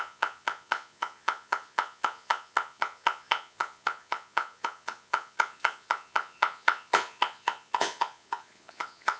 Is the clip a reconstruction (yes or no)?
yes